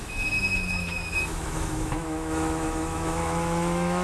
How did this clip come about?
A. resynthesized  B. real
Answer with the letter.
A